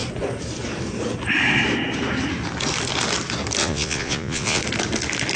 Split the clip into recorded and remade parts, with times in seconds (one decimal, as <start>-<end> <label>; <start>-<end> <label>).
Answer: 0.0-3.6 recorded; 3.6-4.6 remade; 4.6-5.4 recorded